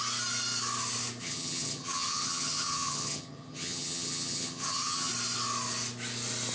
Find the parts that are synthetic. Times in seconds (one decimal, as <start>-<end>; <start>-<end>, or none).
1.2-5.1